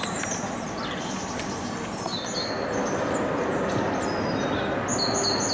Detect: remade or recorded recorded